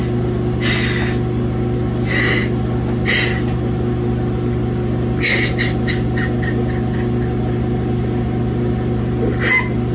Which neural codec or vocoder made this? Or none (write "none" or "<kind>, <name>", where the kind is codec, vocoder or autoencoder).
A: none